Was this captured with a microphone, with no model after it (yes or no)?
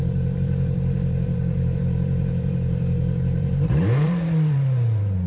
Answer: no